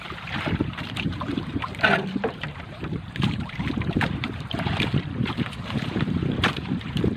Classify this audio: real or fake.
fake